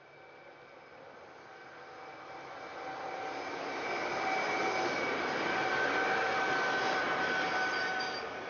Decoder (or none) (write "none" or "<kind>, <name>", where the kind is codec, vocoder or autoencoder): none